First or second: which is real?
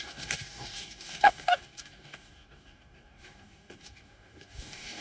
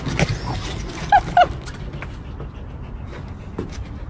second